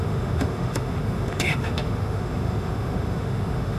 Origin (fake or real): fake